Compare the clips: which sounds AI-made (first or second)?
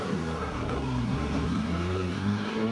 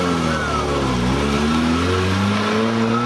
first